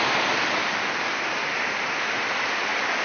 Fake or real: real